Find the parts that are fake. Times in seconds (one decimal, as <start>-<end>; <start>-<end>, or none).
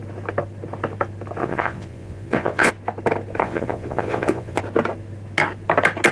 1.4-2.7; 3.4-4.6